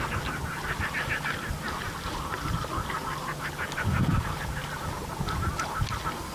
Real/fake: real